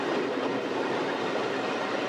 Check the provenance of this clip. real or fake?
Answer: real